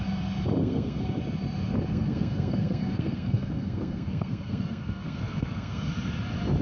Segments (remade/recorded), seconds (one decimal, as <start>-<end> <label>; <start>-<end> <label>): 0.0-0.6 recorded; 0.6-1.2 remade; 1.2-1.9 recorded; 1.9-5.9 remade; 5.9-6.6 recorded